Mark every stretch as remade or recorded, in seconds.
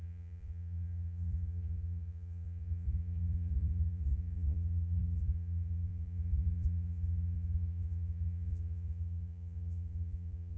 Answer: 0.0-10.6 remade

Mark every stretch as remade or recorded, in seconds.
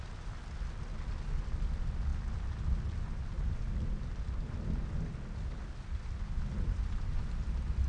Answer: 0.0-7.9 recorded